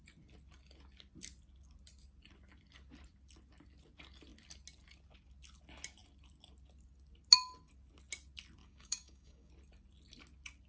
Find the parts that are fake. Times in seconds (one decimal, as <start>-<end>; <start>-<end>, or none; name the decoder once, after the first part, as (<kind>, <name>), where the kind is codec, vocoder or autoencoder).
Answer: 8.6-9.5 (codec, DAC)